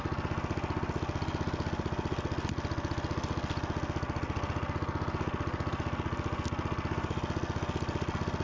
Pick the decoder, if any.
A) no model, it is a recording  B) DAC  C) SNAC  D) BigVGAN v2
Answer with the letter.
A